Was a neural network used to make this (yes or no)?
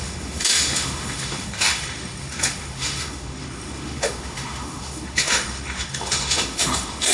yes